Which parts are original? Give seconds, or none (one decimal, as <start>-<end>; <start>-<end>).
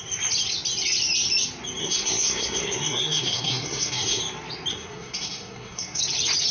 0.0-1.8; 4.2-4.7; 6.0-6.5